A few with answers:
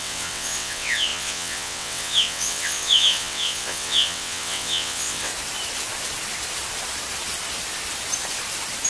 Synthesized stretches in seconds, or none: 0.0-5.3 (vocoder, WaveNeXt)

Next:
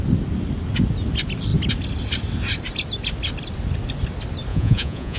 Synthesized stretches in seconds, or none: 4.5-5.2 (vocoder, Vocos)

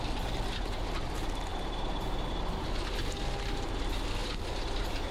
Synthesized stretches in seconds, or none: 4.2-5.1 (vocoder, BigVGAN v2)

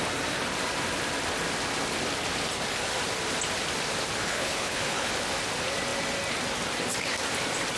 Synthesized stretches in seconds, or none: 4.2-5.1 (codec, HILCodec)